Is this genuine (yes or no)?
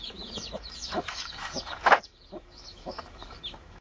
no